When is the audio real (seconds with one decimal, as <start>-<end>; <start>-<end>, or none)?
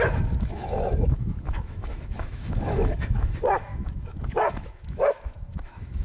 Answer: none